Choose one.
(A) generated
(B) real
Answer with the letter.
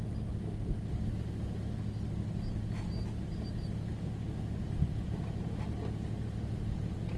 B